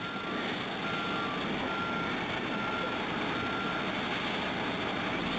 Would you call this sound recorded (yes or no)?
yes